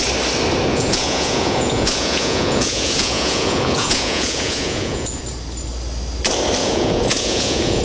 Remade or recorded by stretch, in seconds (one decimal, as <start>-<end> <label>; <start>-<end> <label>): 0.0-0.7 recorded; 0.7-5.2 remade; 5.2-6.6 recorded; 6.6-7.8 remade